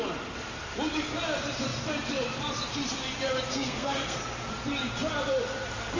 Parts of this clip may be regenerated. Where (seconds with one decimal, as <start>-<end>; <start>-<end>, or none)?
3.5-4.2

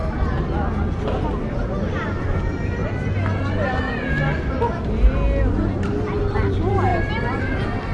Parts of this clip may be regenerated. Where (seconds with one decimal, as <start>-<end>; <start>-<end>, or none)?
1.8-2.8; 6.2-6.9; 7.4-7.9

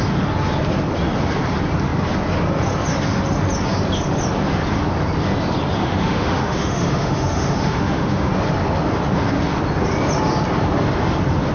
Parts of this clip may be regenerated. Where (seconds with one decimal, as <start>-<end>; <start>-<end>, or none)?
5.8-8.3

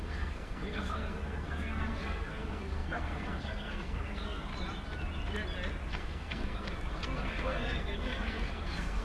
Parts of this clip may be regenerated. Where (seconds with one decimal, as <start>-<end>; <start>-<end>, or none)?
0.0-4.5; 5.9-9.0

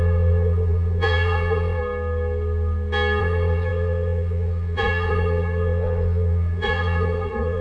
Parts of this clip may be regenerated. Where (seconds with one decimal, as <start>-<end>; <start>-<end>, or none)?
0.0-1.8; 3.2-7.6